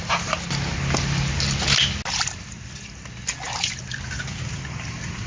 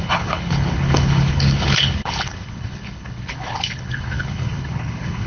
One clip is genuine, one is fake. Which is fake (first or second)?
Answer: second